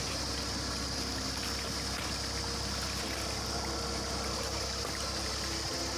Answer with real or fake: real